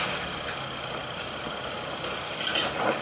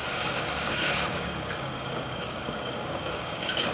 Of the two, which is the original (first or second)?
first